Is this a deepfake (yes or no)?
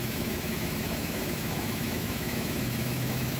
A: yes